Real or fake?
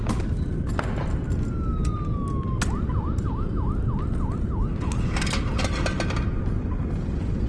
real